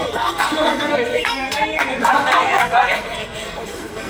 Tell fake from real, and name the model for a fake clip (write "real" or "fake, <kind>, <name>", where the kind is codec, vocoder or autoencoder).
fake, codec, SNAC